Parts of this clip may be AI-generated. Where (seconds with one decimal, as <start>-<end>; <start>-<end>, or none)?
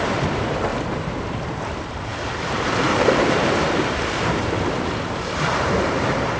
0.0-0.7; 1.2-6.4